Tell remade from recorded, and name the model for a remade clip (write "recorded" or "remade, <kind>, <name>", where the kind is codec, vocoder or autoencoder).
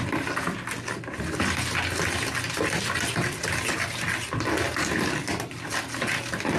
recorded